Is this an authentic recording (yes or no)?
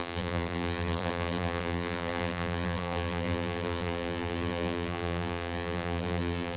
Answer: no